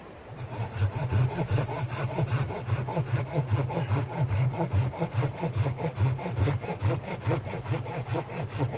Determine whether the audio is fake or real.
real